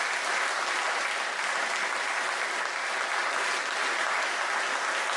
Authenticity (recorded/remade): recorded